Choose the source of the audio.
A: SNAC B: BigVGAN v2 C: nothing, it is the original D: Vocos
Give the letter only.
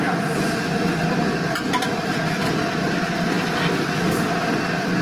C